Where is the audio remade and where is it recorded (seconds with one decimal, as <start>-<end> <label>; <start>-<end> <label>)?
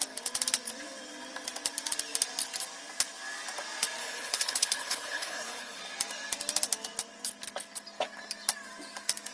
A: 0.0-4.0 recorded; 4.0-5.8 remade; 5.8-9.3 recorded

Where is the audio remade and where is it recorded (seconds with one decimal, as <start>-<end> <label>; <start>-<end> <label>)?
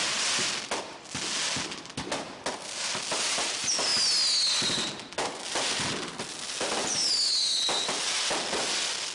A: 0.0-9.1 recorded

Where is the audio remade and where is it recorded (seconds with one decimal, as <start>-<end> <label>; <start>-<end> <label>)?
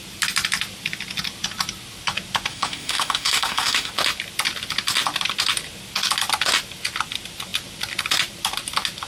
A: 0.0-2.5 recorded; 2.5-3.9 remade; 3.9-9.1 recorded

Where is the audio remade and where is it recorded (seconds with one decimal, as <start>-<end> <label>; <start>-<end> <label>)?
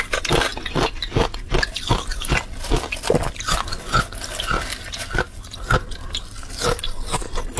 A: 0.0-7.6 recorded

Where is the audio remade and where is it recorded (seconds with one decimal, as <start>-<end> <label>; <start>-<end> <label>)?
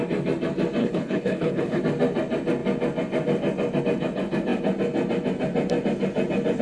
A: 0.0-0.8 recorded; 0.8-1.8 remade; 1.8-6.6 recorded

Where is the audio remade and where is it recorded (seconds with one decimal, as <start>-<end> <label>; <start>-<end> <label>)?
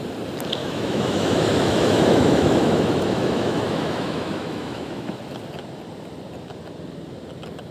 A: 0.0-0.6 recorded; 0.6-5.2 remade; 5.2-7.7 recorded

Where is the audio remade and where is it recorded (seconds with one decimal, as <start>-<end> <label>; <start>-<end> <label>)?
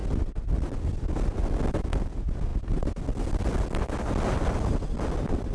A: 0.0-5.5 recorded